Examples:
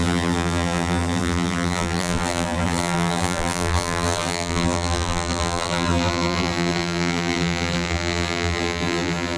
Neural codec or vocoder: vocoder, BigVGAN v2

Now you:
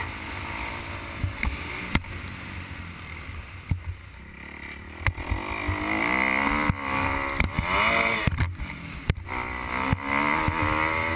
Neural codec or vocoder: none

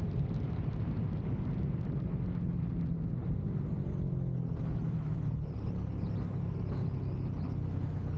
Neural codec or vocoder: none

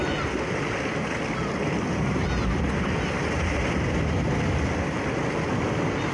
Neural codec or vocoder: none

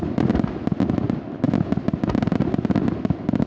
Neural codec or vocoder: none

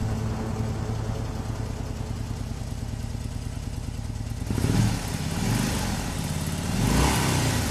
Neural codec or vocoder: none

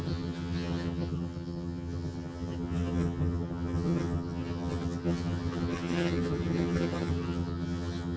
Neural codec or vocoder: vocoder, HiFi-GAN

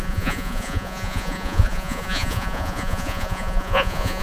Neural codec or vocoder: vocoder, Vocos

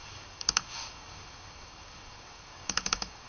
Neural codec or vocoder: codec, DAC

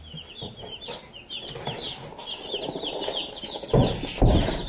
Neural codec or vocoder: none